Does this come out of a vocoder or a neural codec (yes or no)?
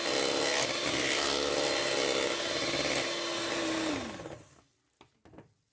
no